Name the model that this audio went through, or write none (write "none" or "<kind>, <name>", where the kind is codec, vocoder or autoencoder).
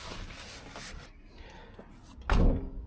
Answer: none